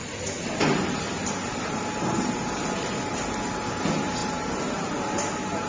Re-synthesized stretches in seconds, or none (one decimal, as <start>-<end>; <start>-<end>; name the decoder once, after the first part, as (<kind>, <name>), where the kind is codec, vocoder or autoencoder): none